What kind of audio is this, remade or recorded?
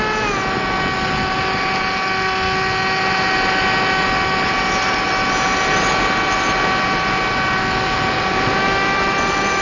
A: recorded